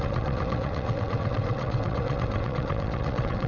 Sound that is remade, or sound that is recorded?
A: remade